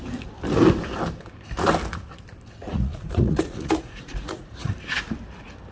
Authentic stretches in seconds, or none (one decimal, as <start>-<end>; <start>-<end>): 0.0-2.6; 4.7-5.7

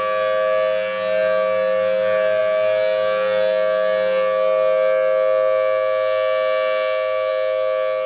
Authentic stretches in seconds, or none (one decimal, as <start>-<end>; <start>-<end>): 0.0-8.1

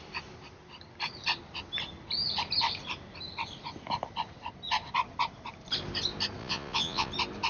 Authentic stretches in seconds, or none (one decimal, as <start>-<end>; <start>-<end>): 0.0-6.4; 7.1-7.5

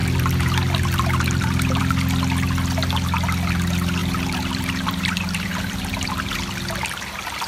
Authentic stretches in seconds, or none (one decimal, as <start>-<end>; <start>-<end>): 1.8-4.0; 6.3-7.5

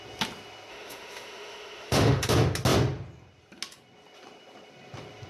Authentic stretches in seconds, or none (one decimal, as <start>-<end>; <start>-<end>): 0.0-0.7; 2.3-5.3

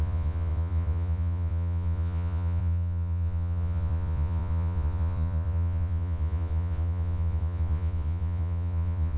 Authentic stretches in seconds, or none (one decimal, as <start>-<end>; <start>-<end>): none